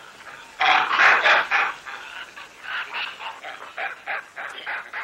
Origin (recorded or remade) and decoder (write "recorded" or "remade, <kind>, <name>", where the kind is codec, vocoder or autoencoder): recorded